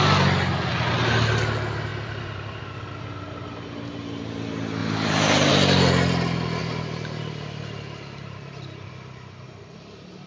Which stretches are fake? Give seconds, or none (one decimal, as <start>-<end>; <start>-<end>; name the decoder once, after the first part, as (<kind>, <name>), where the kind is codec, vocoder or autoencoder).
1.9-2.6 (vocoder, BigVGAN v2); 4.8-5.5; 6.6-8.9